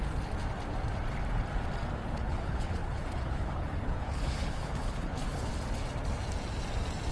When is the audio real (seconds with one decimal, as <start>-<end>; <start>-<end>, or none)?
0.0-2.0; 5.5-7.1